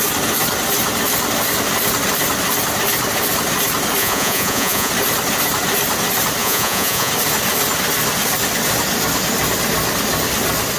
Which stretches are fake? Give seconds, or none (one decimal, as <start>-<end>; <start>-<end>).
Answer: 4.0-4.9; 6.4-7.1